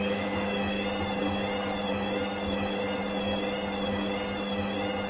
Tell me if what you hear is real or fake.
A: real